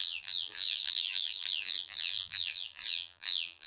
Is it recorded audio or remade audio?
remade